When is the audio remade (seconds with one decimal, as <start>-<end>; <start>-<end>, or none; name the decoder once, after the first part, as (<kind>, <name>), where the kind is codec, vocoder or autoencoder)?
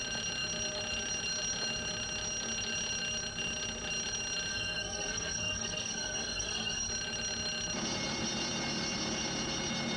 4.5-6.9 (codec, SNAC)